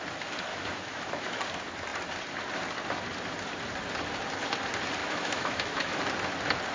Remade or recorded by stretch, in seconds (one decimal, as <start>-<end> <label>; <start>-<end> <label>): 0.0-0.5 recorded; 0.5-1.4 remade; 1.4-5.0 recorded; 5.0-6.0 remade; 6.0-6.7 recorded